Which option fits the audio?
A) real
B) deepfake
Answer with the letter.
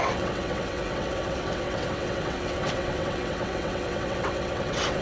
B